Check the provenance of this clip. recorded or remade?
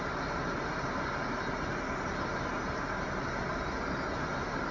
recorded